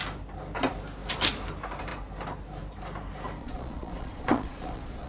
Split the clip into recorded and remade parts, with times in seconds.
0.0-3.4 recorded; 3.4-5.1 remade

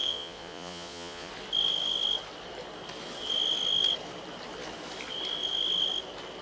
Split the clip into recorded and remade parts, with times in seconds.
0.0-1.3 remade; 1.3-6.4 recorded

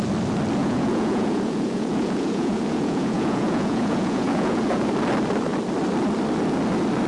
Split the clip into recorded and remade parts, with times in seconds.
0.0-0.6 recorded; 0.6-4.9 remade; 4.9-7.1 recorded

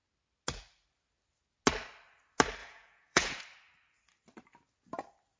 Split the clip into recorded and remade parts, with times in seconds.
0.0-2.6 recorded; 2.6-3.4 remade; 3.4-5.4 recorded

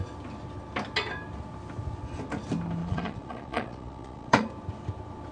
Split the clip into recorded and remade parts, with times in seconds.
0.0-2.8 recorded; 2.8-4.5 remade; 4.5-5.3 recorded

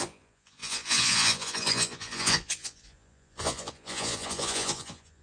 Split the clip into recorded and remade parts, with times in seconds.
0.0-5.2 remade